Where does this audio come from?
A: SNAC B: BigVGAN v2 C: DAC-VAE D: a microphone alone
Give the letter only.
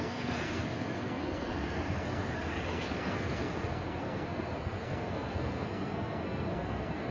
A